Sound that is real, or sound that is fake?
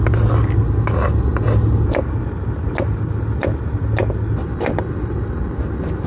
real